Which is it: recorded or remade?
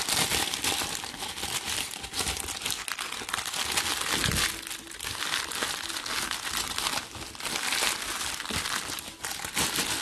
recorded